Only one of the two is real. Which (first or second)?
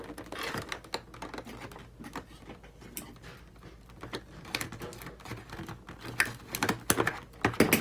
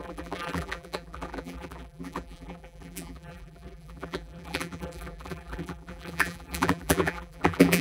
first